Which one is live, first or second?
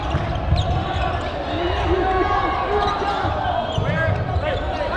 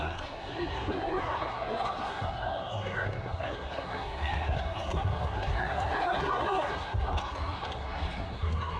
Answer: first